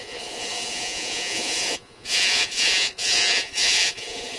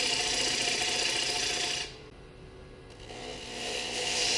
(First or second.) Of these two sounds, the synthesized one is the first